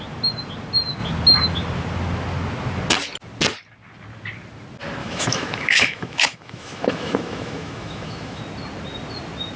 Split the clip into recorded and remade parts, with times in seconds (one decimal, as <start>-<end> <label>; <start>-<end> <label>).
0.0-5.0 recorded; 5.0-8.4 remade; 8.4-9.6 recorded